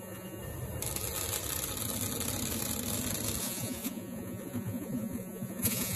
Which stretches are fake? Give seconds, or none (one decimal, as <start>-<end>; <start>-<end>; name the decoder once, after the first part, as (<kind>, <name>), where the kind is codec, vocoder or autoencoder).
0.0-0.4 (vocoder, Vocos); 3.4-6.0